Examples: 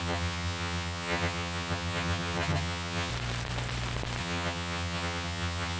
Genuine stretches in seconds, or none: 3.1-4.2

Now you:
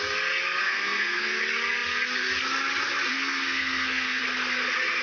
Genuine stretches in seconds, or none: 0.0-0.6; 1.4-3.1; 4.2-5.0

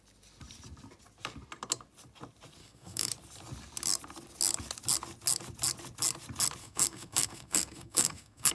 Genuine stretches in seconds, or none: 0.0-2.6; 3.1-6.6

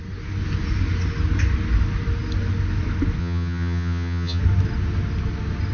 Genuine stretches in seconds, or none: 0.0-3.2; 4.4-5.7